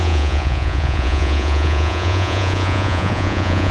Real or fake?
fake